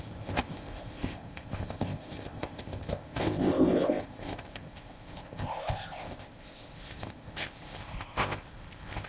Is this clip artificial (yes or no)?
yes